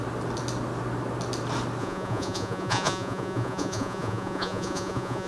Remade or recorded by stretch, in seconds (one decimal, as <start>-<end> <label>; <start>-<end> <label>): 0.0-1.8 recorded; 1.8-5.3 remade